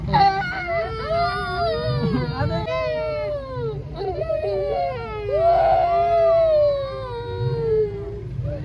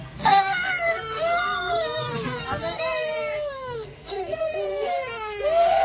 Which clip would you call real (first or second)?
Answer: first